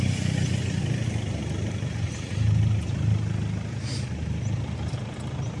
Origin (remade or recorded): recorded